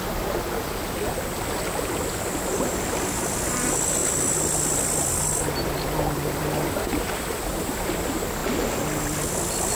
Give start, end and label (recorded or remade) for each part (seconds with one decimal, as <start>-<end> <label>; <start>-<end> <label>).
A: 0.0-9.7 recorded